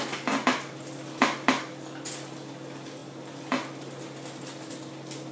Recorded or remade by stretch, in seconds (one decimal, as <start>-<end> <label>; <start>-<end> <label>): 0.0-5.3 recorded